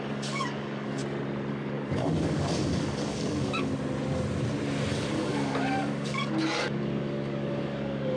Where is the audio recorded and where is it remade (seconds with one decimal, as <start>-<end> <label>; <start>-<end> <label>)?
0.0-1.0 remade; 1.0-1.5 recorded; 1.5-3.7 remade; 3.7-4.9 recorded; 4.9-8.2 remade